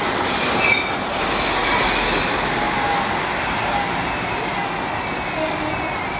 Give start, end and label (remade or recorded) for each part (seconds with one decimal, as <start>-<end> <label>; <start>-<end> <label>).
0.0-6.2 recorded